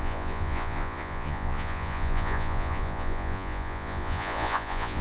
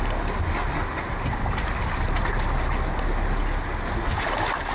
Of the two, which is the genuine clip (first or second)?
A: second